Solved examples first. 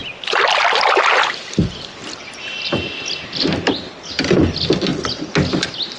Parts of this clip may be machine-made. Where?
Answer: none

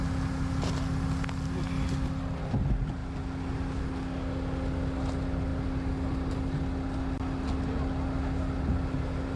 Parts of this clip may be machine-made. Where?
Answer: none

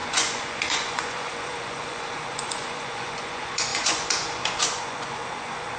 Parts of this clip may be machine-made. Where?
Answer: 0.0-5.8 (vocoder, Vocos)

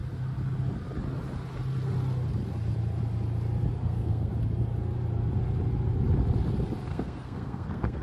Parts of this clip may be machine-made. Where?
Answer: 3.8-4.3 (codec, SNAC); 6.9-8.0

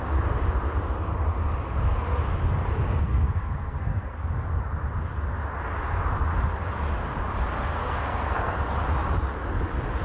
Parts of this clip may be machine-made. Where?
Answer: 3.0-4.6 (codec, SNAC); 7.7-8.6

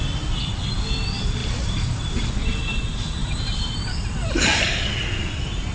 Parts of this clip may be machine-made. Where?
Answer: 1.4-2.3 (vocoder, BigVGAN v2); 3.2-4.8

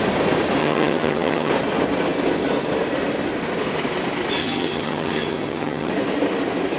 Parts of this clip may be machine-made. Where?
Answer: 0.6-1.5 (vocoder, HiFi-GAN); 4.4-5.9

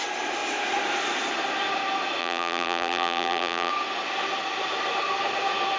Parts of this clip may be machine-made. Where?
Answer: 2.2-3.7 (vocoder, BigVGAN v2)